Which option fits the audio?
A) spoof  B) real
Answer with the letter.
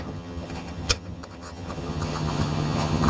A